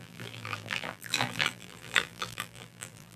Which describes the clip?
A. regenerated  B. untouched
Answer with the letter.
A